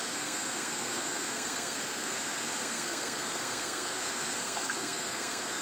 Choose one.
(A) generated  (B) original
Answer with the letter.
A